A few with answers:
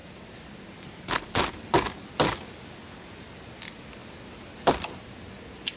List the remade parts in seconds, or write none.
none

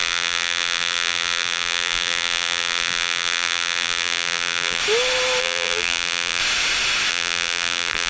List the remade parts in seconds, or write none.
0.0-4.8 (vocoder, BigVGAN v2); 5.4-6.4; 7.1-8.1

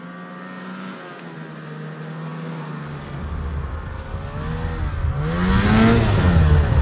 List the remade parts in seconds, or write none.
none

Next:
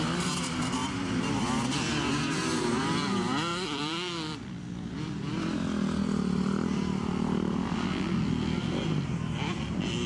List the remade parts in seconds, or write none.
3.5-4.9 (vocoder, BigVGAN v2)

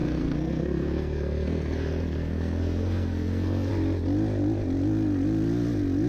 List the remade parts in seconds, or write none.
0.0-3.7 (codec, SNAC)

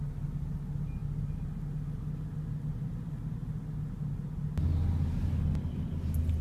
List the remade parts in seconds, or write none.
none

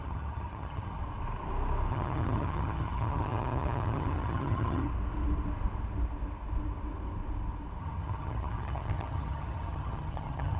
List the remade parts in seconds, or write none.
0.0-1.0 (vocoder, HiFi-GAN); 1.9-4.9; 7.8-10.6

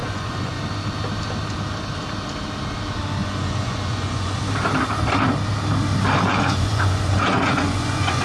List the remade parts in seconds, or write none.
0.0-0.6 (vocoder, Vocos); 3.2-4.4; 6.3-8.2